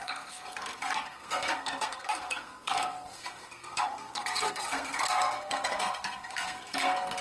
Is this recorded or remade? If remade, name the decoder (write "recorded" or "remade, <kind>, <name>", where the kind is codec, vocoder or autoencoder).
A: remade, codec, SNAC